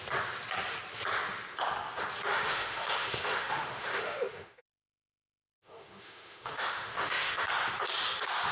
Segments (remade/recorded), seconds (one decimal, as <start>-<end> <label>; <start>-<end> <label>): 0.0-2.3 recorded; 2.3-7.4 remade; 7.4-8.5 recorded